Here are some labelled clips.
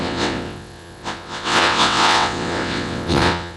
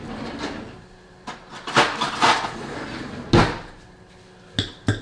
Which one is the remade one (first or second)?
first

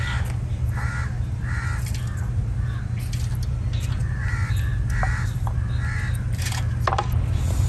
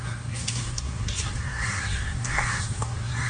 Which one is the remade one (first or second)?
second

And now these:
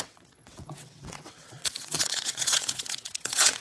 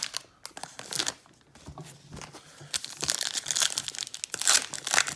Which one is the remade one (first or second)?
first